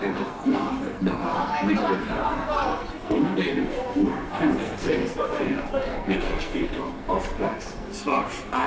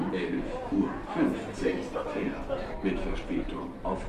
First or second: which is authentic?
second